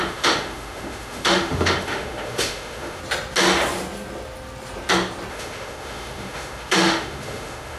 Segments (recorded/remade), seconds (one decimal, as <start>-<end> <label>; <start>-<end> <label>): 0.0-3.0 remade; 3.0-5.3 recorded; 5.3-7.8 remade